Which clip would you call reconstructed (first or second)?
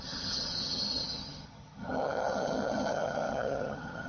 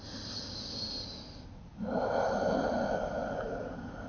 first